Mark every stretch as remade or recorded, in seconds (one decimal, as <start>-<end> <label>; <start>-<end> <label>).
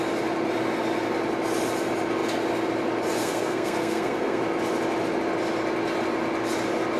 0.0-3.2 recorded; 3.2-4.4 remade; 4.4-7.0 recorded